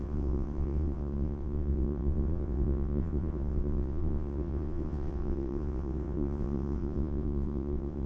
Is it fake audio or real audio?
fake